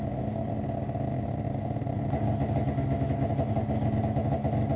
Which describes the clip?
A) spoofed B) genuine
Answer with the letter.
B